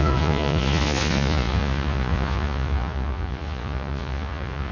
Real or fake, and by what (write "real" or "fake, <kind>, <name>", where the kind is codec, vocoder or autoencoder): fake, vocoder, Vocos